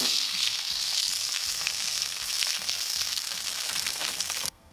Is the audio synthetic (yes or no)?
yes